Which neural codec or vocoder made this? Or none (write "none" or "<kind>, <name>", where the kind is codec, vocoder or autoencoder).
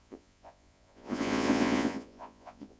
vocoder, Vocos